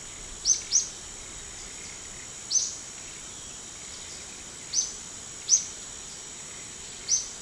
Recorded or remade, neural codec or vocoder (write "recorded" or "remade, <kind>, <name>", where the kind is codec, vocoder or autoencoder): recorded